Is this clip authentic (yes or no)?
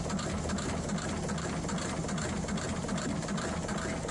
yes